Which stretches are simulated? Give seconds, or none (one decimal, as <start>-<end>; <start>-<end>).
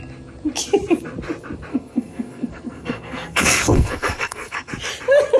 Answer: 1.7-4.7